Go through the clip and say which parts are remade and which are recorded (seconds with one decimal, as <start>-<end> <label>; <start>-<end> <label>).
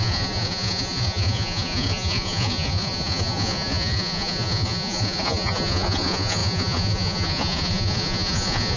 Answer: 0.0-8.8 remade